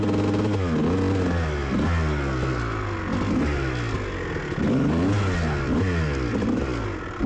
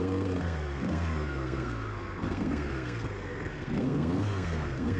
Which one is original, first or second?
first